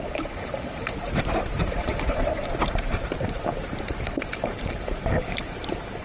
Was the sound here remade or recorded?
remade